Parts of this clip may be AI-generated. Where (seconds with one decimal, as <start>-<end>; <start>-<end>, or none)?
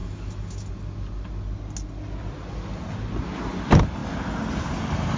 0.0-0.7